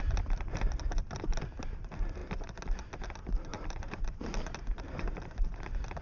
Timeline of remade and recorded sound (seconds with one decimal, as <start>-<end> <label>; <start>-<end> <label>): 0.0-3.5 recorded; 3.5-4.0 remade; 4.0-6.0 recorded